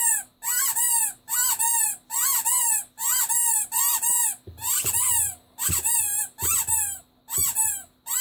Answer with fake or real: real